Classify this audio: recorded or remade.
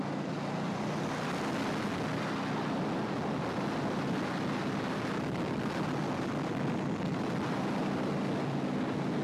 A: recorded